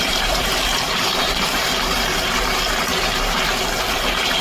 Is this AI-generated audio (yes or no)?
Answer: yes